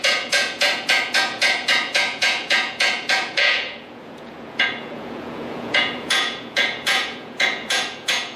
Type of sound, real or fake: fake